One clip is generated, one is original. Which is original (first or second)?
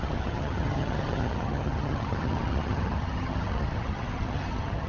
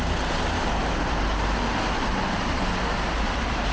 second